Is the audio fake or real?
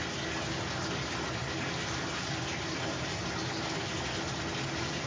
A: real